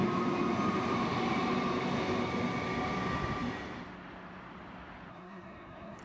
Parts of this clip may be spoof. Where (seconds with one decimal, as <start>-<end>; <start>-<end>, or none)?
5.1-6.0